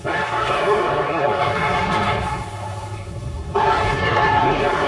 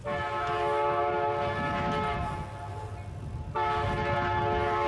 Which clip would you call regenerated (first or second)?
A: first